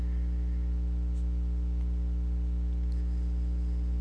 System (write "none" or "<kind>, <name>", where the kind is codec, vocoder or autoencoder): none